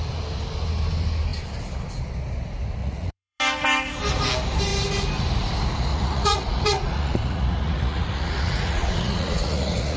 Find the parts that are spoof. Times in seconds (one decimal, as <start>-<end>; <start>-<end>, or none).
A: 2.8-3.4; 5.9-10.0

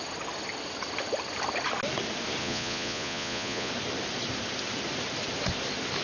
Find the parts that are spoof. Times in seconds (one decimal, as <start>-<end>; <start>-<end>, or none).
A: 2.4-3.7